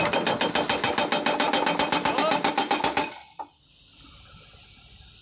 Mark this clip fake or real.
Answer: real